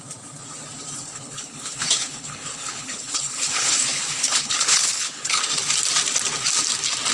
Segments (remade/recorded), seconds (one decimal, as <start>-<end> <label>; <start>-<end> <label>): 0.0-1.1 recorded; 1.1-5.4 remade; 5.4-7.1 recorded